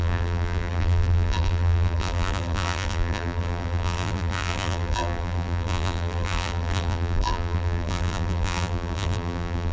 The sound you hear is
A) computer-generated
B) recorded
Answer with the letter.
A